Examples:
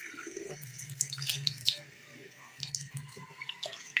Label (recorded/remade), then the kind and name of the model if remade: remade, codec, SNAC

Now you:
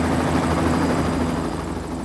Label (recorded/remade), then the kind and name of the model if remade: recorded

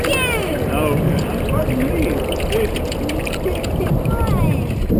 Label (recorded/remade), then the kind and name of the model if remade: recorded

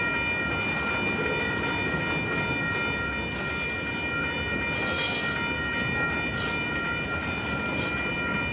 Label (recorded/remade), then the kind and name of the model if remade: recorded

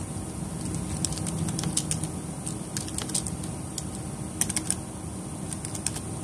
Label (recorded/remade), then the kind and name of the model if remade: recorded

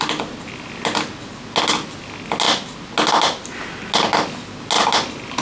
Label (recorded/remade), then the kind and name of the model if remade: recorded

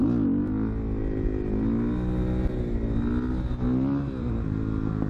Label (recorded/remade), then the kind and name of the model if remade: recorded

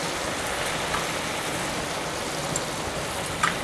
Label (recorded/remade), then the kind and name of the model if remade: recorded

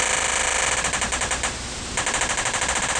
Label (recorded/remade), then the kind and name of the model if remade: recorded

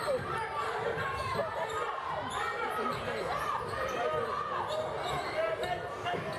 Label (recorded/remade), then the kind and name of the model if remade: recorded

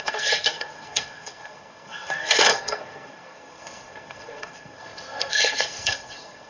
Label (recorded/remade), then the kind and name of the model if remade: remade, codec, SNAC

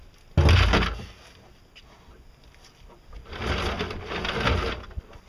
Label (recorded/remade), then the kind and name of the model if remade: recorded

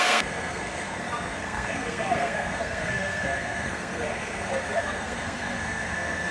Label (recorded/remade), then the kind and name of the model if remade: remade, codec, SNAC